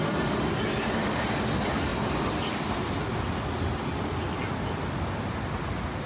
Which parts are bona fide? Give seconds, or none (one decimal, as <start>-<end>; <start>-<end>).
0.0-6.1